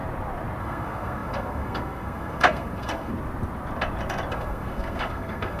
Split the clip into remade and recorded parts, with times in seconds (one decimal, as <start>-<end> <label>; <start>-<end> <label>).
0.0-0.6 recorded; 0.6-3.1 remade; 3.1-4.3 recorded; 4.3-5.6 remade